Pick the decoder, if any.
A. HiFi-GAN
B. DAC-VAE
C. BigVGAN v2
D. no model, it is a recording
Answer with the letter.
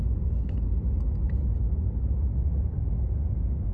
D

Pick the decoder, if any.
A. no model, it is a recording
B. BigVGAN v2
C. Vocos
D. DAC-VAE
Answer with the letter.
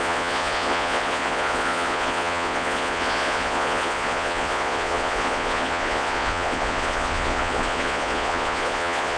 C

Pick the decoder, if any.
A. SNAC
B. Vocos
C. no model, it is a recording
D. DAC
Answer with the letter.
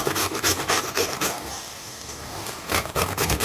D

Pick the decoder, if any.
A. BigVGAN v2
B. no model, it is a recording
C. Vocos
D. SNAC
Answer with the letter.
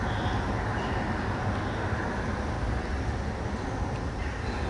B